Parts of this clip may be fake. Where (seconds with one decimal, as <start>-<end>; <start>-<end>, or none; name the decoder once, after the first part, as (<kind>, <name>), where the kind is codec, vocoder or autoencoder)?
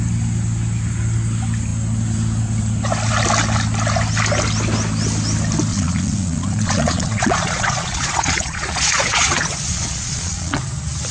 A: 5.7-10.6 (vocoder, Vocos)